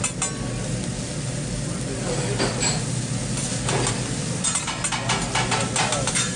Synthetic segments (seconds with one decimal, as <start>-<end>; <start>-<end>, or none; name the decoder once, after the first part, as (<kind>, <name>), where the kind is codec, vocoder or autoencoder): none

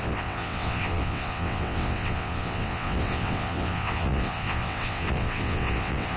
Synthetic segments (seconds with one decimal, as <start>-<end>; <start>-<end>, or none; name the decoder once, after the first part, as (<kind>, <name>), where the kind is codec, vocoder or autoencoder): 0.0-6.2 (vocoder, WaveNeXt)

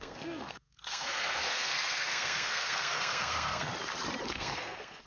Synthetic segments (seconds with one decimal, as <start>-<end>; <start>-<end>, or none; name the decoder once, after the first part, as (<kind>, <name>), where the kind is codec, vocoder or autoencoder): 0.0-3.7 (codec, SNAC); 4.3-5.1

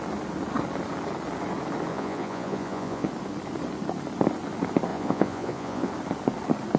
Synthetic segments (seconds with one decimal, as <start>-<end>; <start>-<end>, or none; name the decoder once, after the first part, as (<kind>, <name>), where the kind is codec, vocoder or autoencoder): 1.9-3.1 (vocoder, Vocos); 4.9-5.9

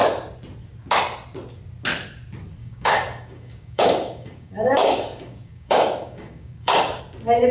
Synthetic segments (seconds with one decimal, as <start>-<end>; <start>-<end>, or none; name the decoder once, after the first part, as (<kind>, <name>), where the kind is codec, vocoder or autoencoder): 2.6-7.0 (codec, DAC)

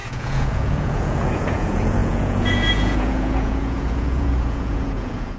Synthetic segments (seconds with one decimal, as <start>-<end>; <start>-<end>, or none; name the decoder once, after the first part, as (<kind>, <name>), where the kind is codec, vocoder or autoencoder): 0.0-5.4 (vocoder, Vocos)